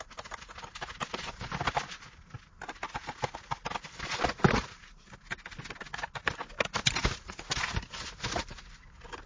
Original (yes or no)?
yes